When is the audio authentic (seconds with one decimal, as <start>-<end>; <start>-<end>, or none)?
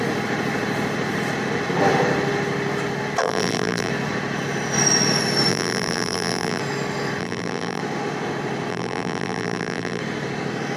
0.0-3.2; 3.9-5.5; 6.6-7.2; 7.8-8.7; 10.0-10.8